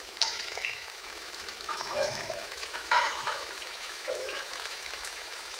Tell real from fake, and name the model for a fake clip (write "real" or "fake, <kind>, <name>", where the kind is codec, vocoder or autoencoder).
fake, autoencoder, DAC-VAE